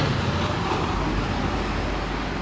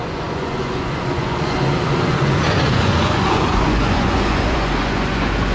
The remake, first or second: second